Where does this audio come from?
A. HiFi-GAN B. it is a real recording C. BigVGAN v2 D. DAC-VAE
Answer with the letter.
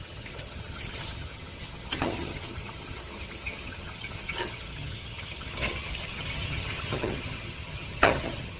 A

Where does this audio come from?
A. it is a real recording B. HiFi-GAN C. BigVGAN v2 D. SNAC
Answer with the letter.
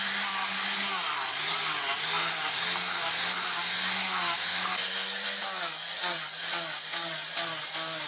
A